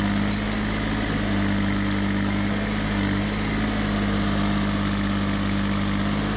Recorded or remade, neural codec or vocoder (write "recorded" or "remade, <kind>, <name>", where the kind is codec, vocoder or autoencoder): recorded